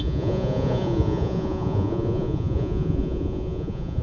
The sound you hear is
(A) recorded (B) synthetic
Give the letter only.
B